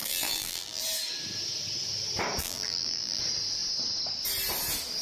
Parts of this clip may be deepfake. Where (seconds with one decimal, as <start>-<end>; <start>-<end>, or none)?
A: 0.0-0.8; 2.4-3.2